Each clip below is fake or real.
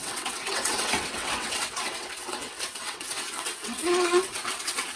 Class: fake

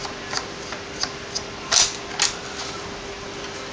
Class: real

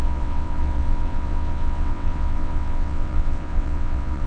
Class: fake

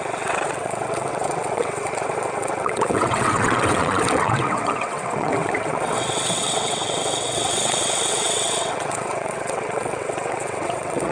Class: fake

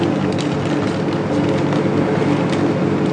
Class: real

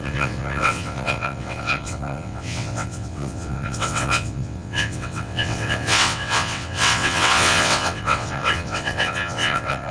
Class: fake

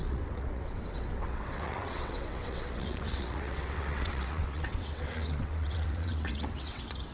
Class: fake